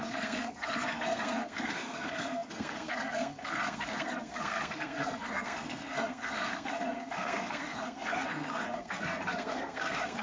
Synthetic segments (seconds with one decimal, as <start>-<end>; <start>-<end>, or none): 0.0-10.2